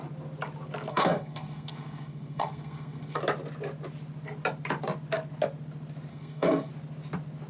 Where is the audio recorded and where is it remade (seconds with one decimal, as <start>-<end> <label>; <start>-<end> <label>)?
0.0-0.9 recorded; 0.9-3.2 remade; 3.2-6.1 recorded; 6.1-6.7 remade; 6.7-7.5 recorded